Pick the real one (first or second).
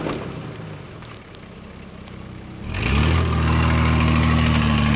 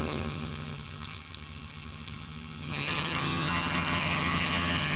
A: first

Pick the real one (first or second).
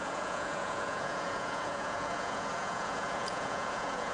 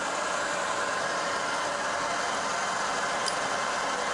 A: second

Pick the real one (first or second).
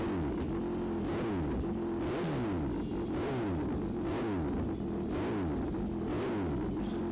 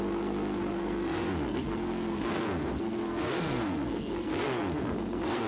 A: first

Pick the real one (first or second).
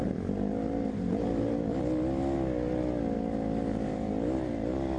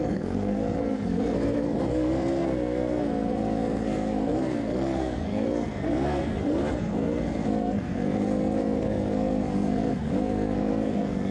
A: first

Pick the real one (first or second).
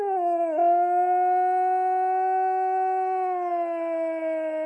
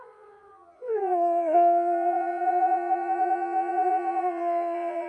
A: first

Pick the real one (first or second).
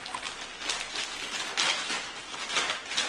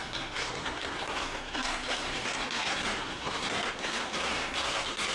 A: first